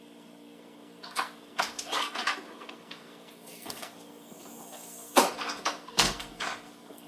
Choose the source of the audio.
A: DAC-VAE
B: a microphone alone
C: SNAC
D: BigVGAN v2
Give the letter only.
C